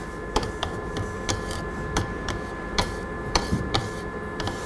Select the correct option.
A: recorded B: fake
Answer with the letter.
B